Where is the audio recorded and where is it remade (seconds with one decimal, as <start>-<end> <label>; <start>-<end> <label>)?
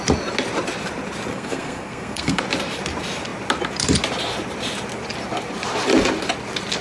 0.0-1.3 recorded; 1.3-2.4 remade; 2.4-6.8 recorded